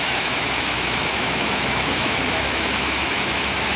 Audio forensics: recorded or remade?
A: remade